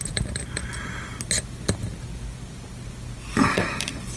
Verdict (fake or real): real